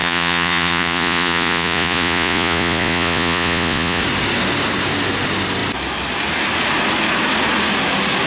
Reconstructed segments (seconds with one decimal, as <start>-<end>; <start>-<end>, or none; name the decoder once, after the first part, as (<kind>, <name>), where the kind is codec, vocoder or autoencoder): 0.0-4.0 (vocoder, Vocos)